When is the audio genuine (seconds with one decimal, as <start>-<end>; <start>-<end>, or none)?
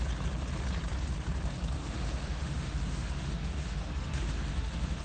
0.0-1.8